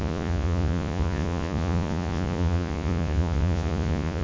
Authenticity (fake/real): fake